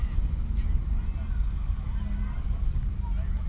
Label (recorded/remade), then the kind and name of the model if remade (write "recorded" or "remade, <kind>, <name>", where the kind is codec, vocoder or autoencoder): recorded